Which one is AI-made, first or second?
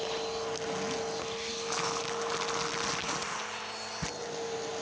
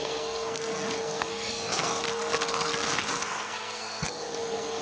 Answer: second